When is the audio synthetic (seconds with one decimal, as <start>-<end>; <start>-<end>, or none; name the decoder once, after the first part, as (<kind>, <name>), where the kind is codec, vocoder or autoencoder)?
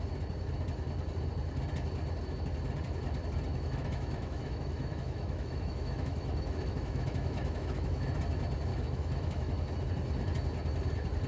3.5-8.2 (autoencoder, DAC-VAE); 8.7-9.5